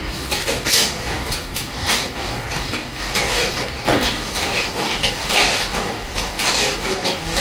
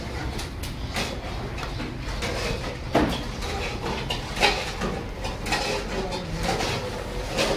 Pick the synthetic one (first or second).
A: first